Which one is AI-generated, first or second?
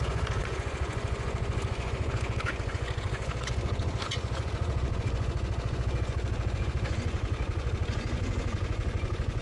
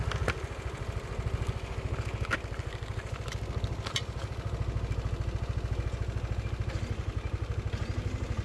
first